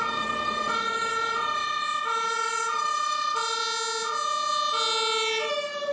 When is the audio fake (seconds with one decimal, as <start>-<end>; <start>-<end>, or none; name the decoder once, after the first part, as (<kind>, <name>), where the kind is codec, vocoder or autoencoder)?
0.0-1.6 (vocoder, BigVGAN v2); 2.1-3.6; 5.5-5.9